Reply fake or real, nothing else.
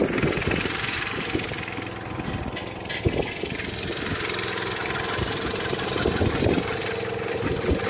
real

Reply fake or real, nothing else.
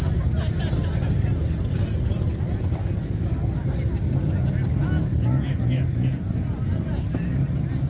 real